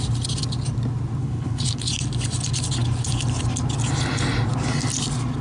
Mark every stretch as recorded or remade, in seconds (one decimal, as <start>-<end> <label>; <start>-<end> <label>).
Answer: 0.0-1.2 recorded; 1.2-1.9 remade; 1.9-5.4 recorded